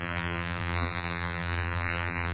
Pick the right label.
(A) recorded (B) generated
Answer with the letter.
B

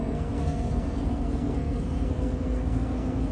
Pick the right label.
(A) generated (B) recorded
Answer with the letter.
A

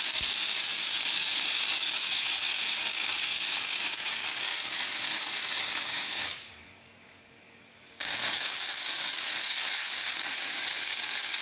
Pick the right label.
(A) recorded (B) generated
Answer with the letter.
B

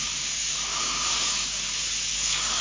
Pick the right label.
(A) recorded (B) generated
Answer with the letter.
B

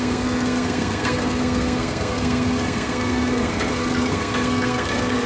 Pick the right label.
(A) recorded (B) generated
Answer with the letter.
B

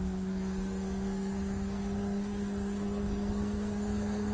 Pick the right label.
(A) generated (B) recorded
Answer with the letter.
A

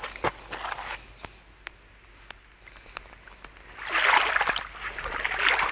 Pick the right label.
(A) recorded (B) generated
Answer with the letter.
A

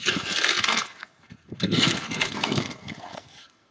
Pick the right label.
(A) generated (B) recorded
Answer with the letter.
A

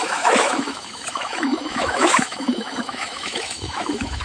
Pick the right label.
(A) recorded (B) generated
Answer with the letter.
B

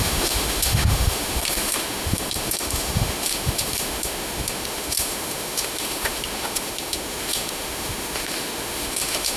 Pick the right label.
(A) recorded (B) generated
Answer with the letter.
B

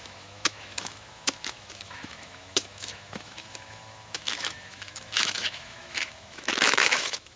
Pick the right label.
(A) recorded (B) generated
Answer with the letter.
B